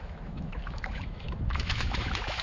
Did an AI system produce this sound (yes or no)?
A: yes